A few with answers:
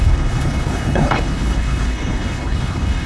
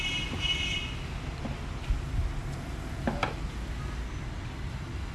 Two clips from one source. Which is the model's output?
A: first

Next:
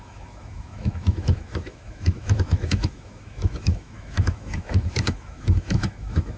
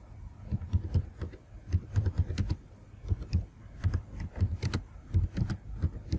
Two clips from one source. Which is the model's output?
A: first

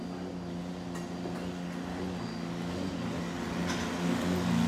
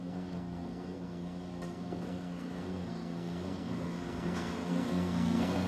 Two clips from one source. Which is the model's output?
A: second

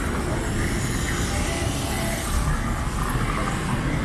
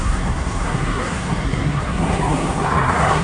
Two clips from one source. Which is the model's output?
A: second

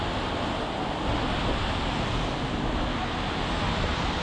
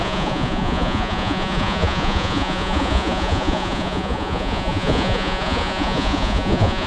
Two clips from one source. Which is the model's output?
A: second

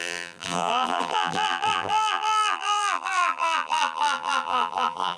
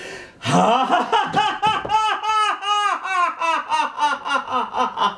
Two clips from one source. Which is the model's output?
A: first